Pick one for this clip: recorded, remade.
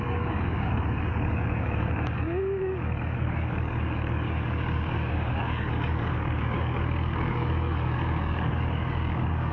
remade